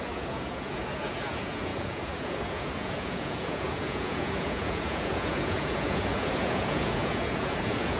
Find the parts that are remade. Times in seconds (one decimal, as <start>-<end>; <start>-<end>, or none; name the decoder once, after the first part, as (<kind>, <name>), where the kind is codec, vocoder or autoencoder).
0.0-8.0 (vocoder, Vocos)